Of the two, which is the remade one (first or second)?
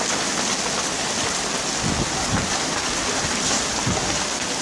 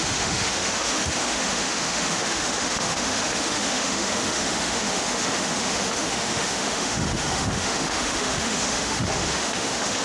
second